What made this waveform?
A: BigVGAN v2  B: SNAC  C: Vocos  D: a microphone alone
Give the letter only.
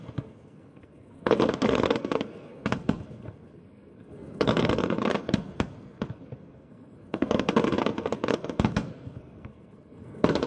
B